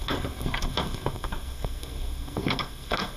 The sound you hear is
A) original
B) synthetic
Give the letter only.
B